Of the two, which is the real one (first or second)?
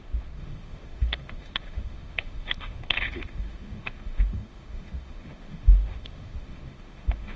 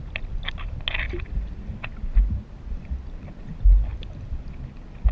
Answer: second